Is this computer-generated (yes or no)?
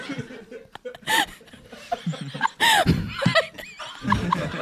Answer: no